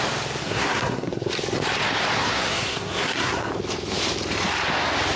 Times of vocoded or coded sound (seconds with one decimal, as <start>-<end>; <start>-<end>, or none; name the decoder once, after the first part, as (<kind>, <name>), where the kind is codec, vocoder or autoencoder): 0.4-1.3 (codec, SNAC); 2.2-3.5